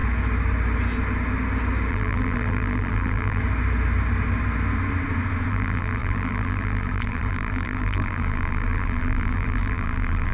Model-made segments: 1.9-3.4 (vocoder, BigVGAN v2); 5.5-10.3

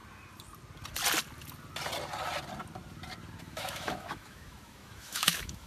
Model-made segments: 3.4-5.7 (autoencoder, DAC-VAE)

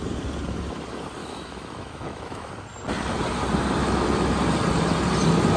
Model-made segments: 1.2-2.5 (autoencoder, DAC-VAE); 3.8-4.3

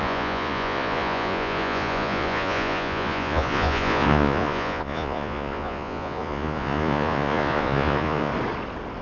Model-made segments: 0.0-8.3 (vocoder, Vocos)

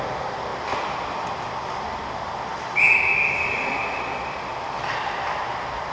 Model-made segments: none

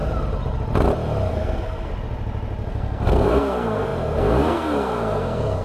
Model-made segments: 1.3-1.9 (codec, SNAC); 2.7-5.6

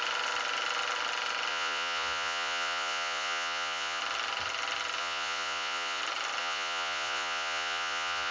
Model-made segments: 1.5-4.0 (vocoder, Vocos); 5.0-6.0; 6.4-8.3